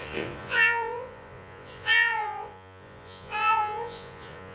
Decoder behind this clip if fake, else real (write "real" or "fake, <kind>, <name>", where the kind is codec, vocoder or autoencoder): fake, vocoder, Vocos